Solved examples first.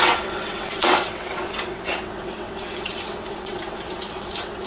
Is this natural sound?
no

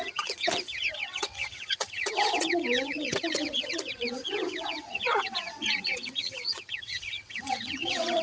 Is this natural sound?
no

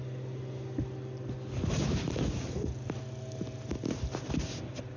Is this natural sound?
yes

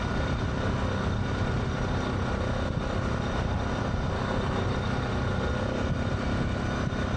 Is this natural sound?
yes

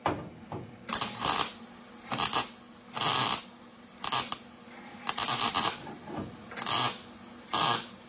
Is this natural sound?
yes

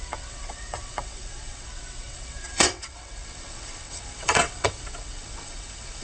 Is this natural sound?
no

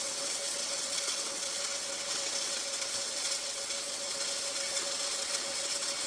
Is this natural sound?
no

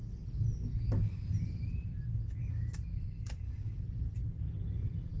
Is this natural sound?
yes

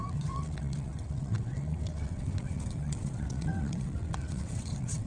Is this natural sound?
no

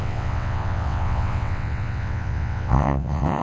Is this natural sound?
no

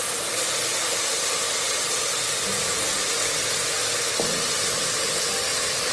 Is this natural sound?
yes